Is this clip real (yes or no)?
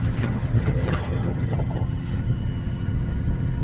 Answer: no